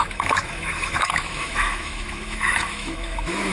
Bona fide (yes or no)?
no